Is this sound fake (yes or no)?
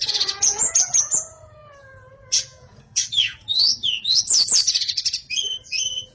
yes